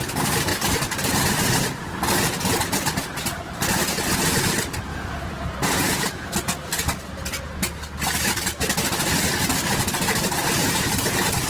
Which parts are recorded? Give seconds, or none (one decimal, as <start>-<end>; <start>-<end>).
0.0-4.9; 6.3-11.5